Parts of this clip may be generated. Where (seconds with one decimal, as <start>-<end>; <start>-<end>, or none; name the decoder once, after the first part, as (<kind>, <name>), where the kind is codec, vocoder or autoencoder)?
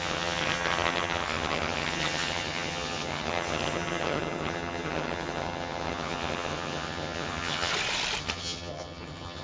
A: 0.0-7.7 (vocoder, HiFi-GAN); 8.2-9.4